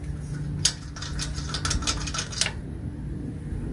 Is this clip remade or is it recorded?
recorded